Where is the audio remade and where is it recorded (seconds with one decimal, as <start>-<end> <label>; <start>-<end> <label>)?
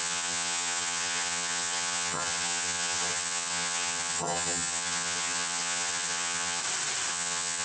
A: 0.0-6.6 remade; 6.6-7.1 recorded; 7.1-7.6 remade